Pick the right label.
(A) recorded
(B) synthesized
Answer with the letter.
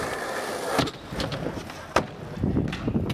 A